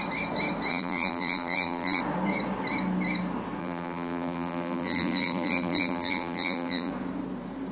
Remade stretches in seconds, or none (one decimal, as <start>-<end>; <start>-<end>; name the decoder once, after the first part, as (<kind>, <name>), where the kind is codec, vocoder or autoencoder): 0.7-2.0 (vocoder, BigVGAN v2); 3.6-6.9